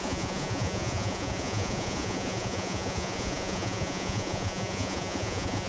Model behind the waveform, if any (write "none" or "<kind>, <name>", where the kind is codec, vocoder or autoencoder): vocoder, Vocos